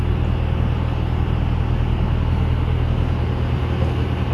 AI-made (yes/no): no